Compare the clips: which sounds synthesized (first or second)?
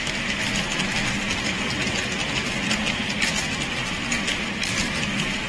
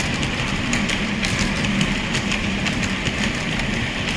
second